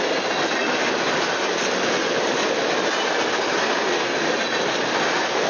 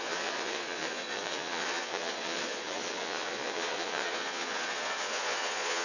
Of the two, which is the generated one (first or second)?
second